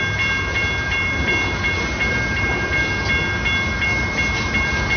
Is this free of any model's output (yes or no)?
yes